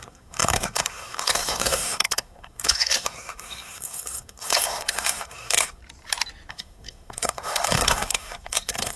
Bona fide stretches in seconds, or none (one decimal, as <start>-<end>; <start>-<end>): 5.8-6.5